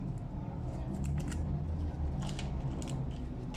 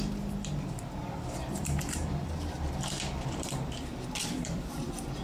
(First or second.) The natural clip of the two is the first